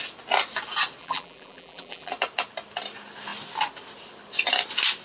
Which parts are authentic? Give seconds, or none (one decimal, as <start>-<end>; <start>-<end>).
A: 0.0-1.0; 2.1-5.0